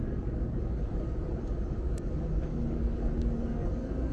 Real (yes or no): no